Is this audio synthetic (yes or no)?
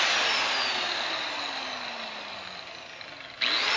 no